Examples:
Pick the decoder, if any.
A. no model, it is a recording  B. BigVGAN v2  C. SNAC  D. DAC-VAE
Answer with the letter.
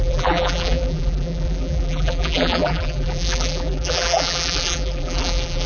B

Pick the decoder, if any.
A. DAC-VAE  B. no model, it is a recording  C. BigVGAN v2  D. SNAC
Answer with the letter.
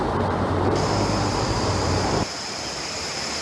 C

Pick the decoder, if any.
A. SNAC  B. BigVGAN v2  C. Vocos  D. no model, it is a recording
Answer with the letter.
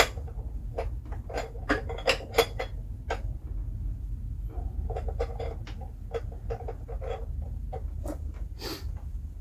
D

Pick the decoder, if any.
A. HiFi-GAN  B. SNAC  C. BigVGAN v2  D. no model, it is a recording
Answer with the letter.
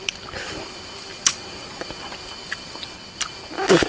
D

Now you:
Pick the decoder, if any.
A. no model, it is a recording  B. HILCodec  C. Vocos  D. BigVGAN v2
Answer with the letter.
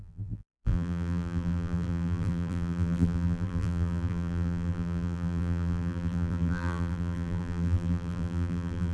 D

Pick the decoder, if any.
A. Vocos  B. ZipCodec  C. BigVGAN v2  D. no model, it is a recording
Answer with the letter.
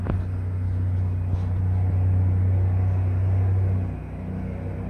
D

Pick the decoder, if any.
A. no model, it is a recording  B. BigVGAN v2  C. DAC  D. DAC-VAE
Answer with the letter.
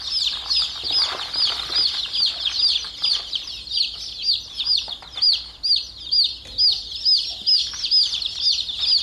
A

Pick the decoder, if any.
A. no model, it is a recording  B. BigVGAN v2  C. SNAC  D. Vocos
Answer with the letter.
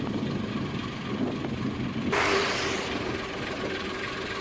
A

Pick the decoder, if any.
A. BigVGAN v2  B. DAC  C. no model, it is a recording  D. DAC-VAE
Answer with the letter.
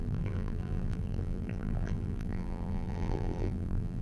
A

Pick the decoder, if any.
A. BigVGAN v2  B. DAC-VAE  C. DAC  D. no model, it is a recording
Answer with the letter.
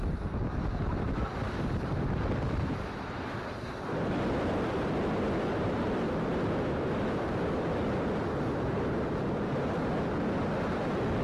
A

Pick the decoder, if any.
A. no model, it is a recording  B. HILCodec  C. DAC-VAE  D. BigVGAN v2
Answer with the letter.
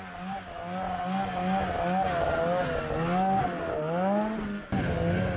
A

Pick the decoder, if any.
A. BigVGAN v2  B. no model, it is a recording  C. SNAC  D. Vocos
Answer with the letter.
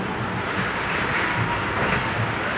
B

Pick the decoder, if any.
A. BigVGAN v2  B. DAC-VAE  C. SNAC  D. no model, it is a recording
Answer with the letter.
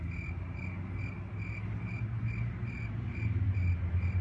D